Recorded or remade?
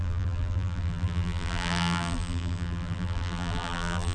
remade